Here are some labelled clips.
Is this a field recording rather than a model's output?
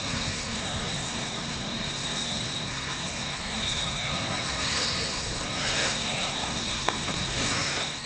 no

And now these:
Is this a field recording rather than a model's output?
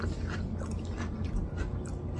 yes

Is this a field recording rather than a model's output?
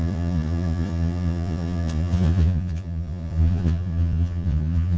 no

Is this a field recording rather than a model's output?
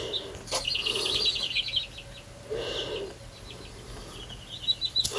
yes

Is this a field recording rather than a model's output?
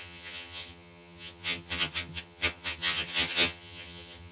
no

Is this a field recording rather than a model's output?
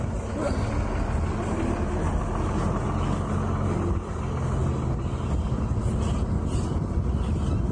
yes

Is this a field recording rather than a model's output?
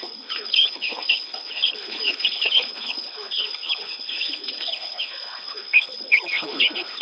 no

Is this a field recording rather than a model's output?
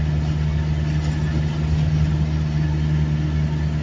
yes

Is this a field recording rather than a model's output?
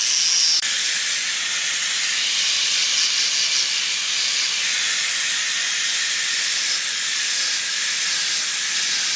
yes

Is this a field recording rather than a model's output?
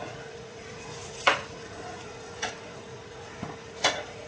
no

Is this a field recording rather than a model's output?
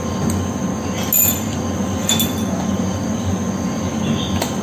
yes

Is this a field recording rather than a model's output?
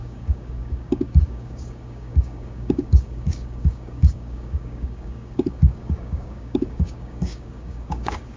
no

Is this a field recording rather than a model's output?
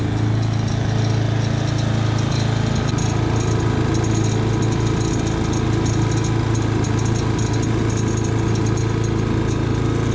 yes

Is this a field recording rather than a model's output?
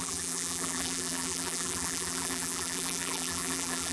no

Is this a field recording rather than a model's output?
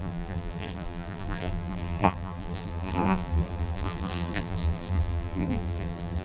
no